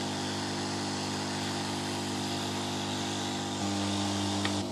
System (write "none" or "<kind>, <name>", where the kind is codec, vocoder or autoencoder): none